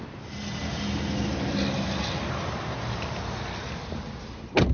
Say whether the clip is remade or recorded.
recorded